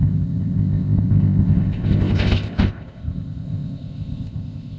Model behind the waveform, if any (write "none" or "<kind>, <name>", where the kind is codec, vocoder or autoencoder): codec, ZipCodec